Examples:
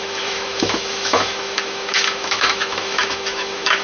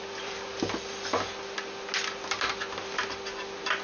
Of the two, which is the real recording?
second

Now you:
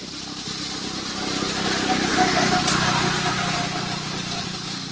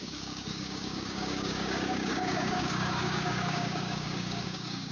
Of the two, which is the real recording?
first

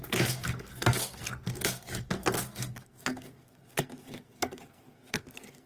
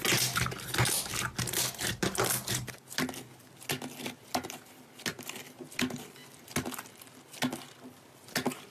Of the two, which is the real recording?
second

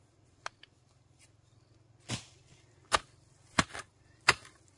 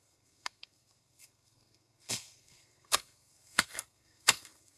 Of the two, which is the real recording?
first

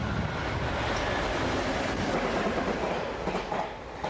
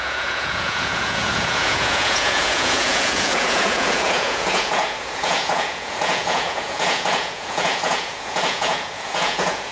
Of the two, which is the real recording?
first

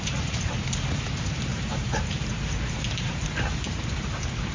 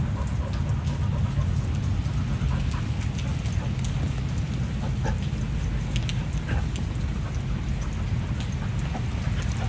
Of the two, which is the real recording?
second